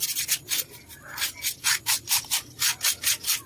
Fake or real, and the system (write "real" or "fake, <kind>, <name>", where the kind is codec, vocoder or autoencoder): real